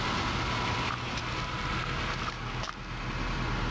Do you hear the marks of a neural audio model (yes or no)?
no